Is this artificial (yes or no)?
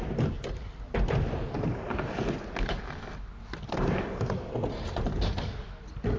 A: no